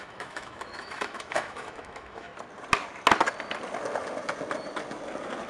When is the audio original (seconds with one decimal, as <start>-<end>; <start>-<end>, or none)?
2.3-5.5